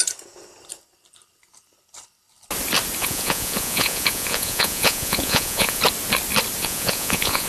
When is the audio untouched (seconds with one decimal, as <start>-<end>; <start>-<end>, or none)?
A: 0.0-3.0; 5.8-6.6

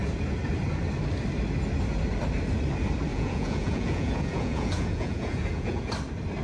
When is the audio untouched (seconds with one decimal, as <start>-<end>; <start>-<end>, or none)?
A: 0.0-3.1; 5.9-6.4

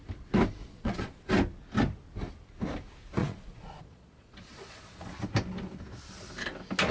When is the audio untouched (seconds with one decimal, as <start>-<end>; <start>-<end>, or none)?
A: 0.0-0.6; 1.3-3.2; 5.1-6.9